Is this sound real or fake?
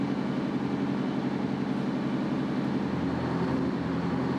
real